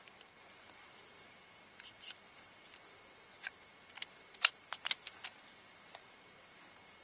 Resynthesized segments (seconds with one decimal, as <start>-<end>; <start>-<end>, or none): 0.0-7.0